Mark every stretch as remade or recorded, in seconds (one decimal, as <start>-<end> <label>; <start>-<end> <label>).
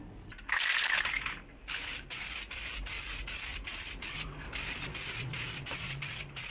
0.0-5.3 recorded; 5.3-6.0 remade; 6.0-6.5 recorded